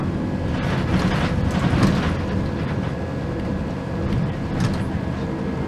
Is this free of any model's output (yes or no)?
yes